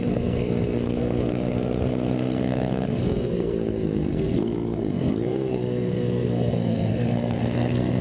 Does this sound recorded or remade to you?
remade